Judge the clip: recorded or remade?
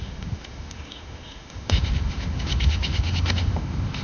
remade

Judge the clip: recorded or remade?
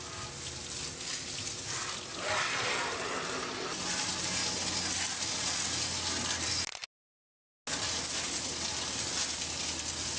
recorded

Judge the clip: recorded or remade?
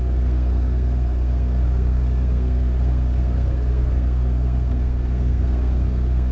remade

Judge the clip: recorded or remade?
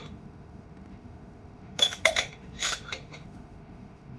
remade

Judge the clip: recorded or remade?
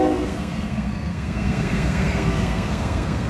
remade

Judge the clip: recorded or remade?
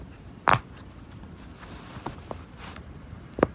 remade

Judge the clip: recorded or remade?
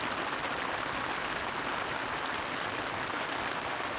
recorded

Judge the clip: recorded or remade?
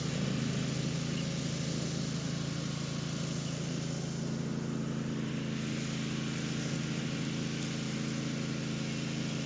recorded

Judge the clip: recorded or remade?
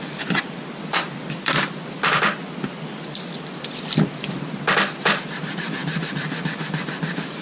remade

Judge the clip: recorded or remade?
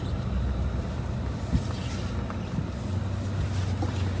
recorded